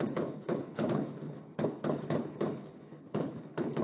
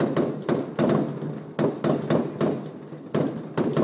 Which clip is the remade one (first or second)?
first